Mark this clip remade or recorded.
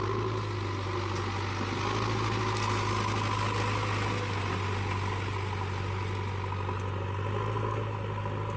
recorded